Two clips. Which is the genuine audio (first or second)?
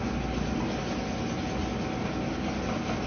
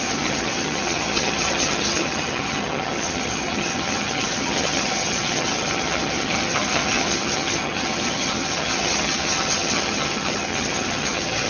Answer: first